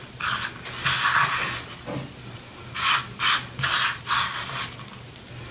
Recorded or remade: recorded